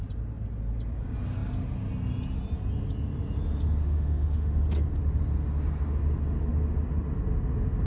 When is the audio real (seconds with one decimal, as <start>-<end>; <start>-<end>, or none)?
0.0-3.8; 4.6-7.9